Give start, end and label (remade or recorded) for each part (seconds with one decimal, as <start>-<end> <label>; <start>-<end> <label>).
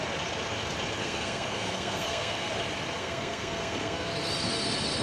0.0-1.0 recorded; 1.0-2.5 remade; 2.5-3.0 recorded; 3.0-4.1 remade; 4.1-5.0 recorded